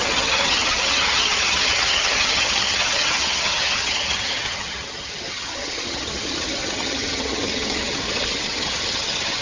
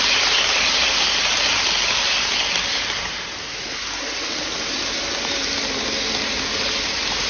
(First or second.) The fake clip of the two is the first